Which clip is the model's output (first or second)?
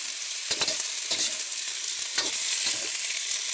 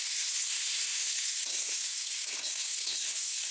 second